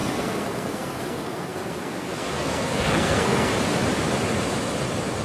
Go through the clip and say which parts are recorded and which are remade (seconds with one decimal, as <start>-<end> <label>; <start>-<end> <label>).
0.0-3.5 remade; 3.5-5.2 recorded